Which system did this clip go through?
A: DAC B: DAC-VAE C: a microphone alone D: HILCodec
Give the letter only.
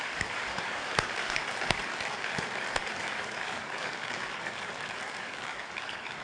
A